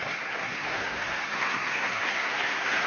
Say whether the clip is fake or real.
fake